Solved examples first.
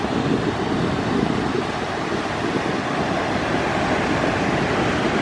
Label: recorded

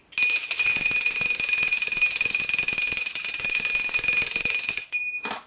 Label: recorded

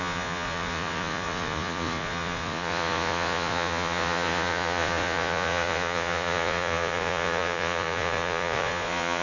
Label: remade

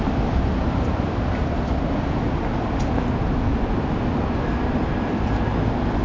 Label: recorded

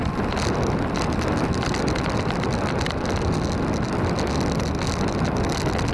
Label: recorded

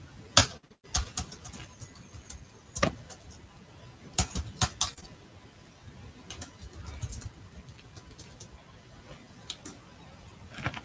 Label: recorded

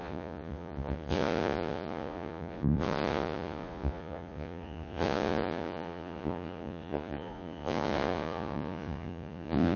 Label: remade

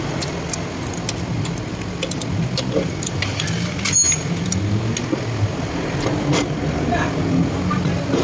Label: recorded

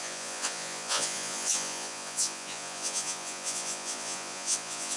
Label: remade